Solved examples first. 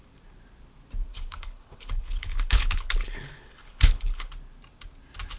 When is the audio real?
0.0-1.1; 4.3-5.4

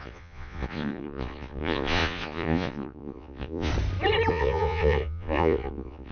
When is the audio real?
3.7-4.3

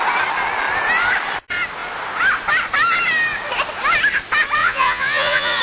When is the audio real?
0.0-4.6

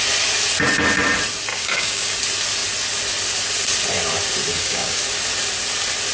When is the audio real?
0.0-1.5; 2.2-4.5; 5.0-6.1